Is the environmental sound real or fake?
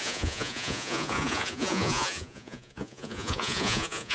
fake